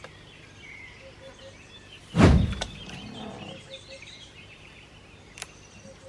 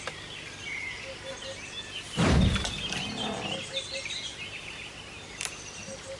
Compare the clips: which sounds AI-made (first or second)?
first